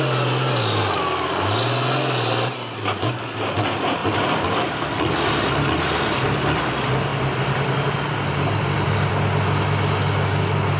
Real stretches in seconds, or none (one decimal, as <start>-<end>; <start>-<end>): 0.0-7.1; 9.1-10.8